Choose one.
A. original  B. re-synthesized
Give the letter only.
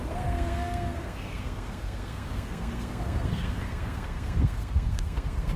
B